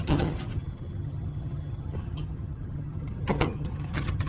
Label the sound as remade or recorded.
remade